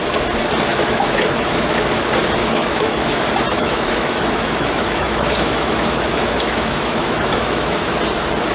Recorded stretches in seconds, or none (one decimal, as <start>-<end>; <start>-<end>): 0.0-0.7; 2.0-2.4; 3.2-3.6; 8.0-8.5